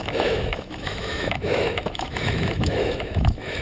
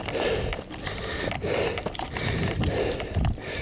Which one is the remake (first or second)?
first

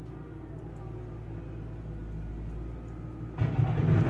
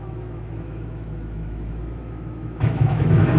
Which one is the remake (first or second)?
second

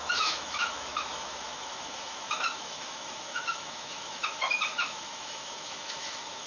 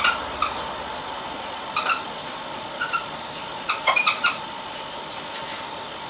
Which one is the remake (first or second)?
first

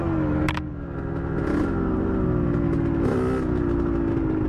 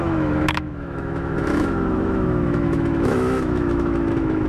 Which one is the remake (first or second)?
second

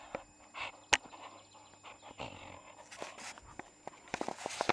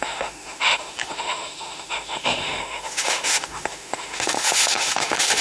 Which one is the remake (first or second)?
second